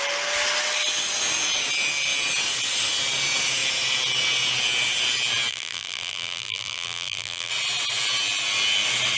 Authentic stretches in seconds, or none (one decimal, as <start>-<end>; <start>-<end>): 0.0-5.5; 7.5-9.2